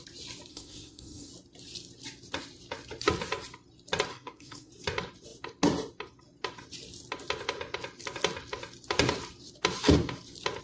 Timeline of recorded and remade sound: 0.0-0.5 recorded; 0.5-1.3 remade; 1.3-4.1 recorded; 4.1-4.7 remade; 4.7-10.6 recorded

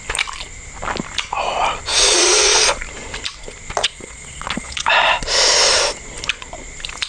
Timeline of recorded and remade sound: 0.0-1.9 recorded; 1.9-2.6 remade; 2.6-3.8 recorded; 3.8-4.9 remade; 4.9-7.1 recorded

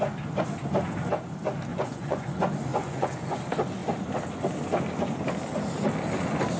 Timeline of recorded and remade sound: 0.0-1.7 recorded; 1.7-2.3 remade; 2.3-2.7 recorded; 2.7-3.4 remade; 3.4-6.6 recorded

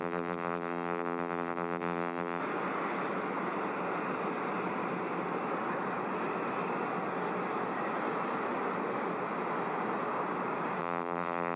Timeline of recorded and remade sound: 0.0-2.4 remade; 2.4-10.8 recorded; 10.8-11.6 remade

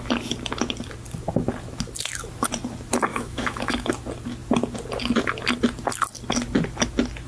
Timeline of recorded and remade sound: 0.0-3.1 recorded; 3.1-3.9 remade; 3.9-7.3 recorded

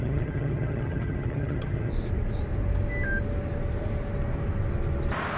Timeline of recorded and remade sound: 0.0-1.9 remade; 1.9-5.4 recorded

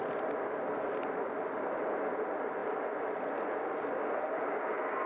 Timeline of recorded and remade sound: 0.0-5.1 recorded